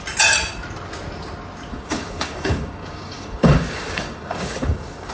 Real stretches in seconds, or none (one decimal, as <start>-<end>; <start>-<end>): 0.0-1.7

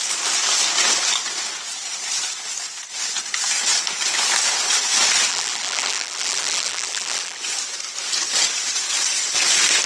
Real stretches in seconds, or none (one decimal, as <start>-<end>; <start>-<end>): 0.0-5.3; 7.4-9.9